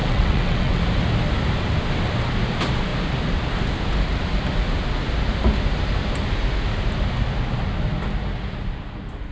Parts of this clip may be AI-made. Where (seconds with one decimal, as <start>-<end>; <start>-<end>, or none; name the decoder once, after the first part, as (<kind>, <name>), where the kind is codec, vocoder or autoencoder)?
0.0-0.8 (vocoder, WaveNeXt)